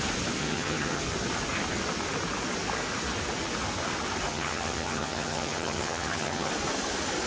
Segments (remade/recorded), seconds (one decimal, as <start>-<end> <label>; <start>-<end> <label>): 0.0-0.4 recorded; 0.4-1.0 remade; 1.0-4.3 recorded; 4.3-6.5 remade; 6.5-7.3 recorded